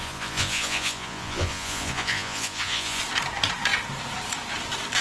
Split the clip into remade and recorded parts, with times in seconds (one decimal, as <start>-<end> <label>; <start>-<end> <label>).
0.0-3.0 remade; 3.0-5.0 recorded